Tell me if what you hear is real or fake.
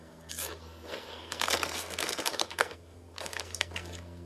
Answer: fake